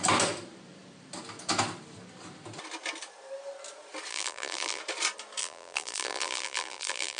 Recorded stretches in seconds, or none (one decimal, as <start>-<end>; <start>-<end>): 0.0-4.1; 4.8-5.4